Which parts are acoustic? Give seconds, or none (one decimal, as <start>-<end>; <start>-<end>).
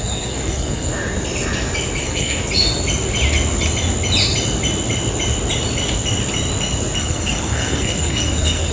0.9-2.0; 2.4-7.0